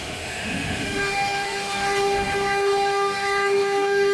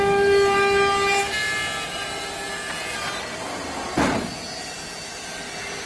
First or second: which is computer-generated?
first